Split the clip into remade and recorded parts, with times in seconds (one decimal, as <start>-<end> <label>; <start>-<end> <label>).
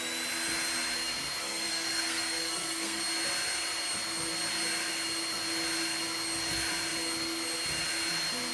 0.0-1.4 recorded; 1.4-3.0 remade; 3.0-8.5 recorded